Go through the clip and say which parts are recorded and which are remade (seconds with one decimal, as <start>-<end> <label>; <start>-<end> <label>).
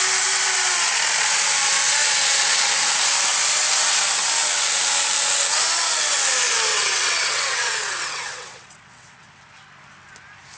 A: 0.0-6.7 recorded; 6.7-9.4 remade; 9.4-10.6 recorded